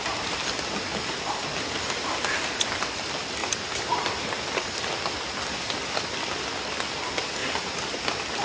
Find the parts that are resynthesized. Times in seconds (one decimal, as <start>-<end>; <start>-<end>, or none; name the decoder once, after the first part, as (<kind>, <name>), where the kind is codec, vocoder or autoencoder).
none

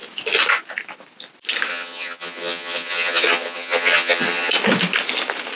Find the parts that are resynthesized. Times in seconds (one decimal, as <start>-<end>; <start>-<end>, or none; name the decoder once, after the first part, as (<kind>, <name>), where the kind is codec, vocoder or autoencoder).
1.7-4.5 (vocoder, HiFi-GAN)

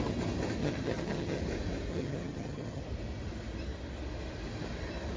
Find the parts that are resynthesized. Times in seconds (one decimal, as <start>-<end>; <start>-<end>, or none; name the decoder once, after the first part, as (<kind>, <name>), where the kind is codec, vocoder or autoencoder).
0.6-1.4 (vocoder, HiFi-GAN); 1.9-2.8

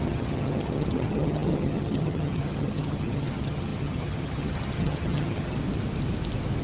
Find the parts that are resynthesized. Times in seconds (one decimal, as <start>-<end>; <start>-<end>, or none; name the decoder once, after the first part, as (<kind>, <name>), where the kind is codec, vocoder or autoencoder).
0.0-5.6 (vocoder, HiFi-GAN)

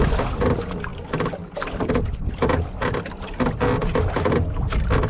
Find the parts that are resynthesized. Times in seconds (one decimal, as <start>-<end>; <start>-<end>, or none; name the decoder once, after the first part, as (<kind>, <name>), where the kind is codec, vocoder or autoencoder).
none

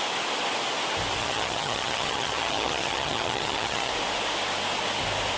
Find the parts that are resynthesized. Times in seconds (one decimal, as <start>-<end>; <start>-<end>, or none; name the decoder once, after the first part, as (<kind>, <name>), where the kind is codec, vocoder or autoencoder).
1.2-3.9 (vocoder, HiFi-GAN)

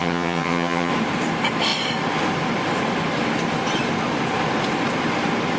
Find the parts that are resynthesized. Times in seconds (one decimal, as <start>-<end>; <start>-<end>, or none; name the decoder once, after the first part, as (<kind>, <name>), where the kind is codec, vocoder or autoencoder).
0.0-0.9 (vocoder, HiFi-GAN)

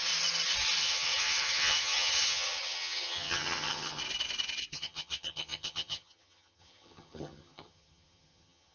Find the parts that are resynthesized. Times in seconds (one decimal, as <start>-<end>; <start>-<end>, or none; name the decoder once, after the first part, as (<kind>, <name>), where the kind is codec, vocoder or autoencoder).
0.8-4.0 (vocoder, HiFi-GAN); 4.7-8.7